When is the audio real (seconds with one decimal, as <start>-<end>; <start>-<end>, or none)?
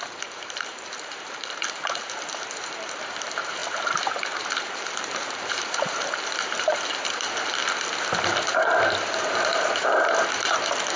7.6-8.3